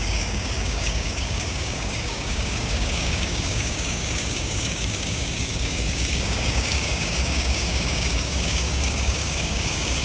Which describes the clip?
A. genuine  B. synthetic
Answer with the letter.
B